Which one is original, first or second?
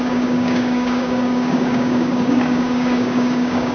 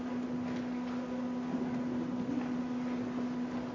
second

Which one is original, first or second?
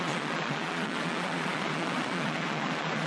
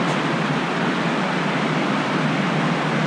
second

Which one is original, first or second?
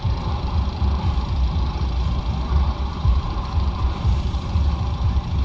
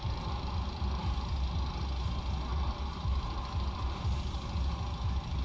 second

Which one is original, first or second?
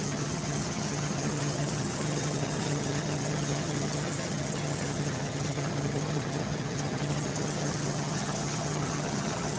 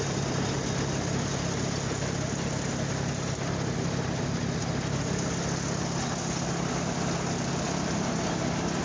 second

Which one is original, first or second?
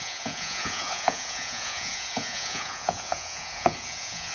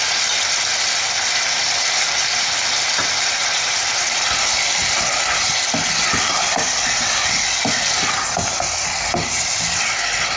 second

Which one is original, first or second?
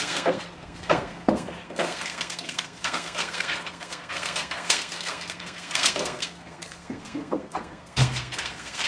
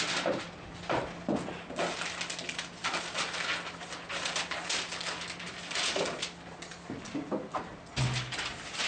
second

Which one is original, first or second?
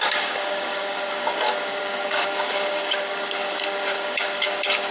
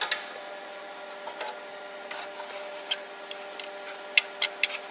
second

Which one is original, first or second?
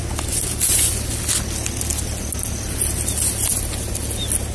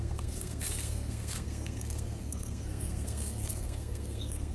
first